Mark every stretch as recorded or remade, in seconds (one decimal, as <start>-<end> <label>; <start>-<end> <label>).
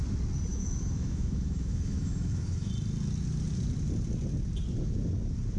0.0-0.5 recorded; 0.5-2.7 remade; 2.7-5.6 recorded